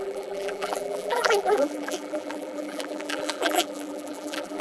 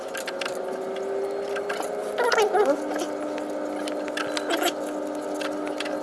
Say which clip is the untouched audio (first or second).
second